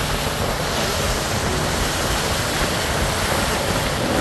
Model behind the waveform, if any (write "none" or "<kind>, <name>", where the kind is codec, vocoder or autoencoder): none